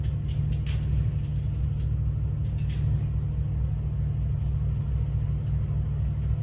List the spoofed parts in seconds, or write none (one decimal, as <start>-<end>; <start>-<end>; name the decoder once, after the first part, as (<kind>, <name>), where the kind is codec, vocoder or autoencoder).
none